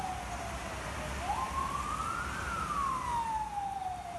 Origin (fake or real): real